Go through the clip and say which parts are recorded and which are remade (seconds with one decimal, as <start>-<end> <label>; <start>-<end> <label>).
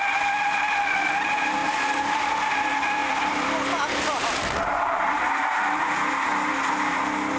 0.0-1.6 recorded; 1.6-2.2 remade; 2.2-3.0 recorded; 3.0-5.9 remade; 5.9-7.4 recorded